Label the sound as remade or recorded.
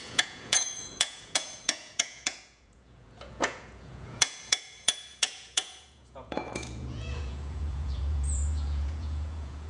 remade